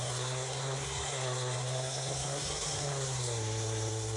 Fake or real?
fake